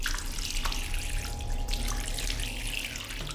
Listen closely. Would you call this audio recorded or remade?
recorded